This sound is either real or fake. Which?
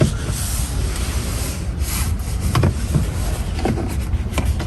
real